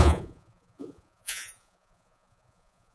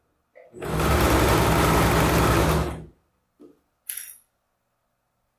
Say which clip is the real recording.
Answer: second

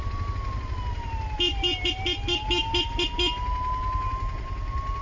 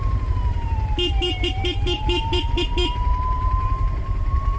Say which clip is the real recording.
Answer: first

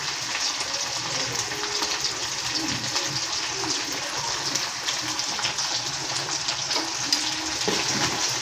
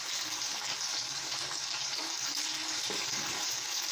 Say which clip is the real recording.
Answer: first